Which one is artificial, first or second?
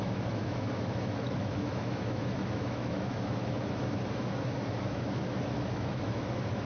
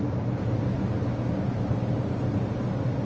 first